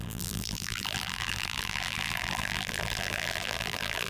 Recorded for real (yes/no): no